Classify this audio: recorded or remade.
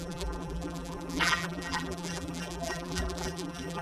remade